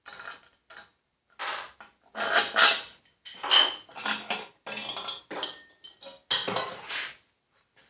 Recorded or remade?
recorded